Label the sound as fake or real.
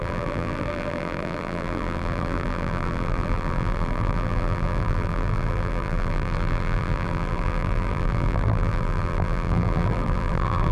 fake